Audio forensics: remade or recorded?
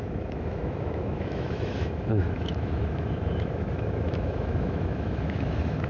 remade